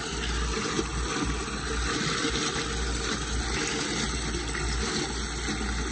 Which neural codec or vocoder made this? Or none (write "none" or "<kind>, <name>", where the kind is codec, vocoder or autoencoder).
none